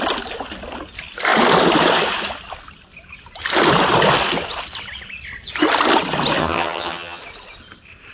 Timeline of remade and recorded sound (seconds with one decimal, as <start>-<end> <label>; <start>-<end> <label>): 0.0-6.4 recorded; 6.4-7.2 remade; 7.2-8.1 recorded